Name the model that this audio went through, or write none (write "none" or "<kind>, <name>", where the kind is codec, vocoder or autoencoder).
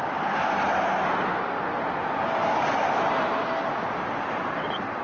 none